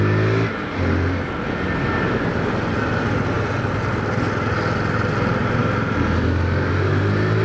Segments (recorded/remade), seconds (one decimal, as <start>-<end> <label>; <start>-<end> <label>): 0.0-7.4 recorded